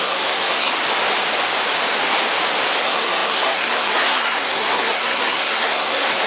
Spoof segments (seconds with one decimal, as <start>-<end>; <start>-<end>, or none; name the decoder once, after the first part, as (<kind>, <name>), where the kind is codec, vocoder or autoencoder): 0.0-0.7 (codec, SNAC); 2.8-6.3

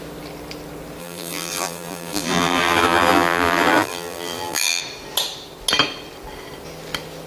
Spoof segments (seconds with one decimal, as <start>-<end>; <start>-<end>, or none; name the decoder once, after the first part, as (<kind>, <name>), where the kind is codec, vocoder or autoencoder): 1.0-4.8 (vocoder, BigVGAN v2)

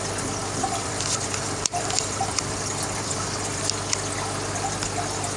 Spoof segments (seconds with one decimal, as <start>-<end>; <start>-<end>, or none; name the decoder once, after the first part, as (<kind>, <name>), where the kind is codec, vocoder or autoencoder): 0.4-3.6 (vocoder, BigVGAN v2)